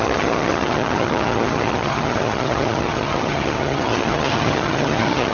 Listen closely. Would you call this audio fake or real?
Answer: fake